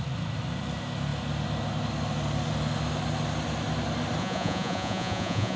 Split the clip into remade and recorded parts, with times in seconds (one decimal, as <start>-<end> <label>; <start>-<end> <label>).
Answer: 0.0-4.2 recorded; 4.2-5.6 remade

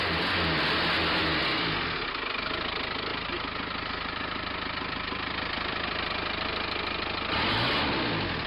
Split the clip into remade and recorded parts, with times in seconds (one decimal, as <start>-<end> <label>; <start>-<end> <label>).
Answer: 0.0-3.1 recorded; 3.1-6.1 remade; 6.1-8.5 recorded

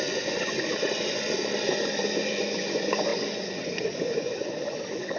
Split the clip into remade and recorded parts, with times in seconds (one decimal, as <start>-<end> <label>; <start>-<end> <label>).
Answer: 0.0-0.7 remade; 0.7-1.7 recorded; 1.7-5.2 remade

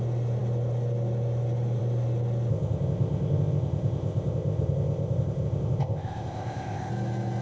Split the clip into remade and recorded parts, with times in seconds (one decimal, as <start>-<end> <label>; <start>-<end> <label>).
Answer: 0.0-2.5 recorded; 2.5-6.9 remade; 6.9-7.4 recorded

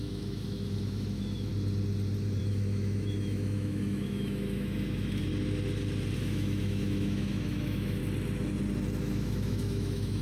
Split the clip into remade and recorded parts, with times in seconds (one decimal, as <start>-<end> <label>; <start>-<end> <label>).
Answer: 0.0-1.5 remade; 1.5-2.4 recorded; 2.4-5.3 remade; 5.3-6.2 recorded; 6.2-8.0 remade; 8.0-9.0 recorded; 9.0-10.2 remade